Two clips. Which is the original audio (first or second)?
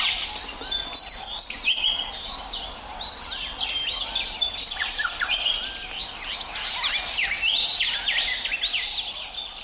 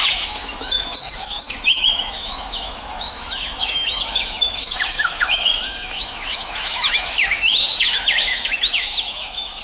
first